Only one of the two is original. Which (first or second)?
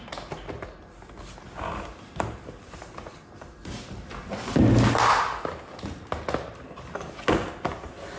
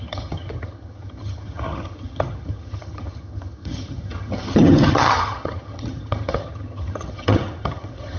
first